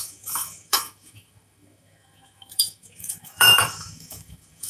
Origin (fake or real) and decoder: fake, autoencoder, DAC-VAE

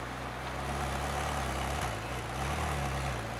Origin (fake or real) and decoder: real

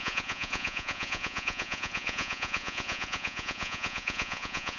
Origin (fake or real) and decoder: fake, vocoder, Vocos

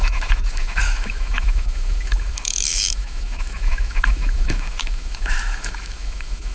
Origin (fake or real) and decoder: fake, autoencoder, DAC-VAE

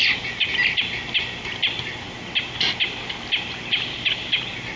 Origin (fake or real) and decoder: real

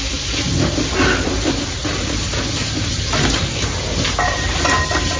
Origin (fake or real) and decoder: real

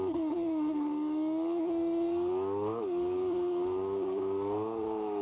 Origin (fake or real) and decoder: fake, codec, DAC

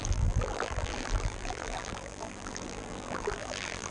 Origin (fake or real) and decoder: fake, vocoder, BigVGAN v2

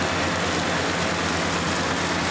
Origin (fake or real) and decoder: real